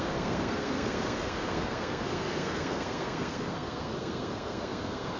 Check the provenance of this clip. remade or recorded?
remade